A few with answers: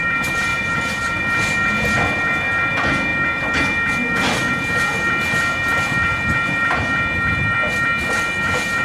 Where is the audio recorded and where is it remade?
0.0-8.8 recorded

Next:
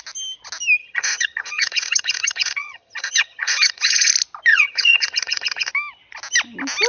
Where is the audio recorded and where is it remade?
0.0-0.8 recorded; 0.8-4.1 remade; 4.1-4.5 recorded; 4.5-5.7 remade; 5.7-6.9 recorded

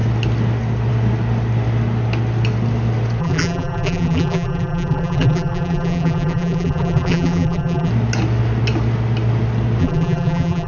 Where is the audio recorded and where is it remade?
0.0-3.2 recorded; 3.2-7.9 remade; 7.9-9.8 recorded; 9.8-10.7 remade

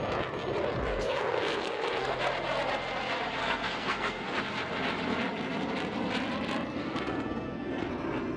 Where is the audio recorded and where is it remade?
0.0-0.9 recorded; 0.9-2.2 remade; 2.2-3.4 recorded; 3.4-4.4 remade; 4.4-6.8 recorded; 6.8-7.9 remade; 7.9-8.4 recorded

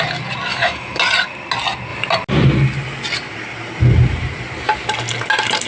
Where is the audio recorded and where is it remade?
0.0-0.5 recorded; 0.5-1.0 remade; 1.0-5.7 recorded